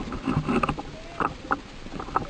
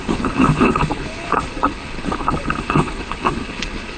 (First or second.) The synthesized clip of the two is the second